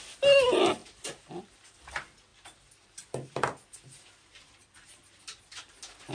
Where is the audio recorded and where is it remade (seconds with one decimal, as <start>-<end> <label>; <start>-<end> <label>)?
0.0-0.8 recorded; 0.8-1.4 remade; 1.4-6.1 recorded